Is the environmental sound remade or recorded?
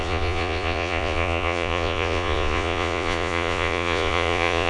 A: remade